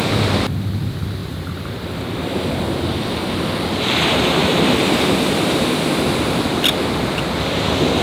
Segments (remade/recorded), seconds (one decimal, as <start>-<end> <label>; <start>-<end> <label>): 0.0-1.2 recorded; 1.2-2.3 remade; 2.3-4.4 recorded; 4.4-5.8 remade; 5.8-8.0 recorded